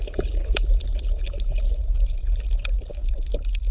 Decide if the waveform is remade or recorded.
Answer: recorded